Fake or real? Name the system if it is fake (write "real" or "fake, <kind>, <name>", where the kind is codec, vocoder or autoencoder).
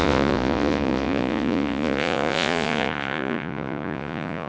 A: fake, vocoder, Vocos